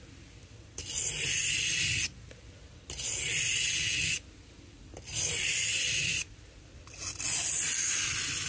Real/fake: real